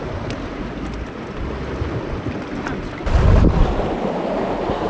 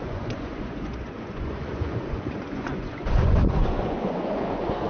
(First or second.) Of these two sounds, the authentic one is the first